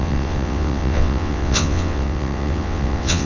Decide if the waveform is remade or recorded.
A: remade